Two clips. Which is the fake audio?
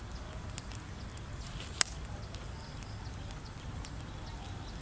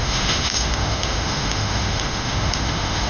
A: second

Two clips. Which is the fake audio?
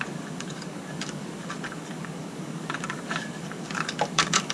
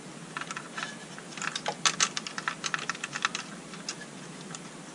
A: first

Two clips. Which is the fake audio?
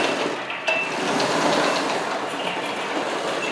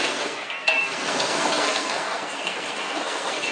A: second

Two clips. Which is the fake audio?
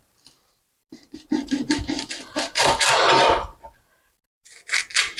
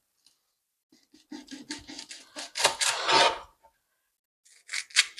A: first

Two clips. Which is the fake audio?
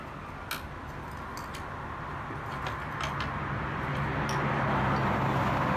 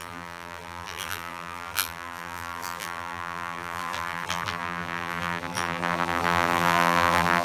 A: second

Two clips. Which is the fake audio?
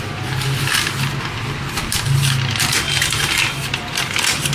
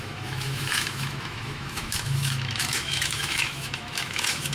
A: second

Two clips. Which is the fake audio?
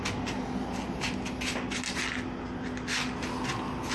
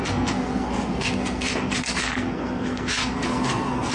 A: second